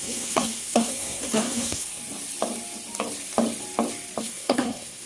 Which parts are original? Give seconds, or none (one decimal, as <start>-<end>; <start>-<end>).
2.0-4.2